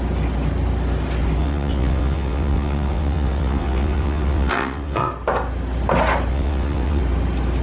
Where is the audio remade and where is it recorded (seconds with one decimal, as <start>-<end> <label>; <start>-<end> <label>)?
0.0-1.4 recorded; 1.4-5.1 remade; 5.1-6.3 recorded; 6.3-7.0 remade; 7.0-7.6 recorded